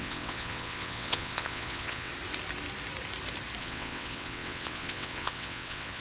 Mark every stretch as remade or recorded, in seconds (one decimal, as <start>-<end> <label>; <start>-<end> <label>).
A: 0.0-2.1 remade; 2.1-3.6 recorded; 3.6-6.0 remade